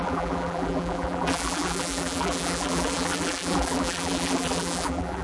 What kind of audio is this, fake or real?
fake